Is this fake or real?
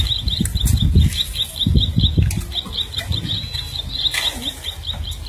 real